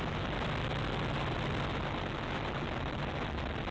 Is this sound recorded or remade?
recorded